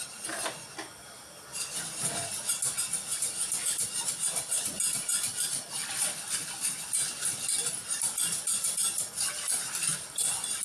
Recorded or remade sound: recorded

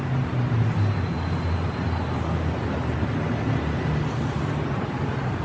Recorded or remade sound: recorded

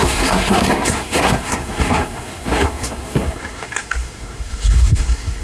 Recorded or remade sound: remade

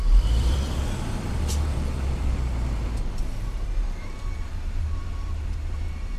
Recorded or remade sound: remade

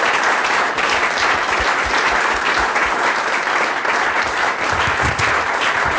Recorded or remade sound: remade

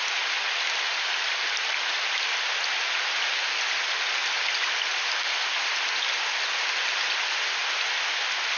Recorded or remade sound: recorded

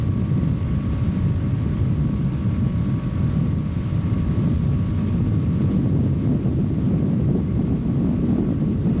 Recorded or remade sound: recorded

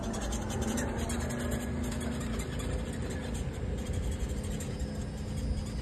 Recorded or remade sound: recorded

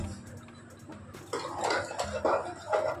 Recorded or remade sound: recorded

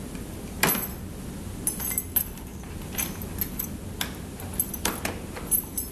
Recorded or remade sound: recorded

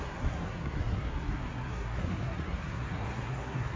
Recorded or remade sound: remade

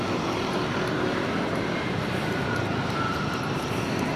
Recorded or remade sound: remade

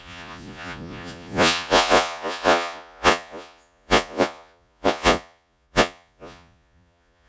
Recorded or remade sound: remade